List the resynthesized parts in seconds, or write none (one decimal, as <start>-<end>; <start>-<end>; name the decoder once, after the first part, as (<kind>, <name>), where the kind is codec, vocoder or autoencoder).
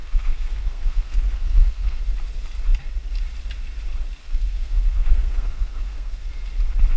0.0-2.0 (codec, SNAC); 4.2-6.3